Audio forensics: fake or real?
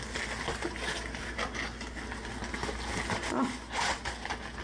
real